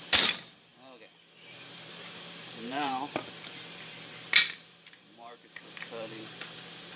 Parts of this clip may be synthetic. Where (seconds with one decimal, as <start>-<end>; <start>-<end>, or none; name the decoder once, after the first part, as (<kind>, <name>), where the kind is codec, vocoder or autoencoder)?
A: 0.0-0.7 (vocoder, BigVGAN v2); 1.7-7.0